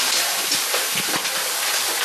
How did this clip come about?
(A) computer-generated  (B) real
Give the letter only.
A